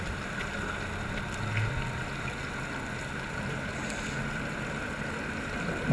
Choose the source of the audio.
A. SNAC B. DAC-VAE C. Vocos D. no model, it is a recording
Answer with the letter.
D